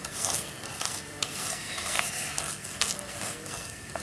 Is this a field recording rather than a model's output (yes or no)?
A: no